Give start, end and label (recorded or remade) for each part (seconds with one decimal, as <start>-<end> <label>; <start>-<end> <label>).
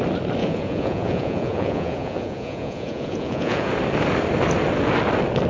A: 0.0-0.4 recorded; 0.4-3.7 remade; 3.7-5.5 recorded